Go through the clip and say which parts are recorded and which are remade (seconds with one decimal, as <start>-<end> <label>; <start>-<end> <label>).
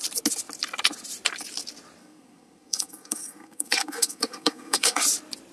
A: 0.0-2.0 recorded; 2.0-5.0 remade; 5.0-5.5 recorded